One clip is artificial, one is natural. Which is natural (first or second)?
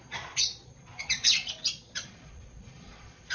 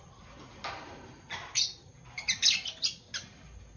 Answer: second